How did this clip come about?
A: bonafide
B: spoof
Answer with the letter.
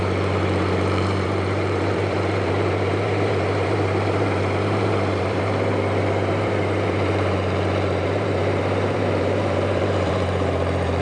B